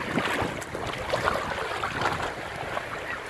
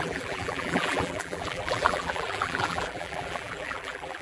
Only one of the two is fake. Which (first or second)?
second